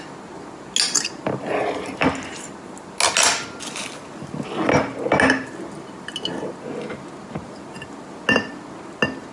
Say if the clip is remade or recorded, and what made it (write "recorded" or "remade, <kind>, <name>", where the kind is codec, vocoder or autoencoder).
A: recorded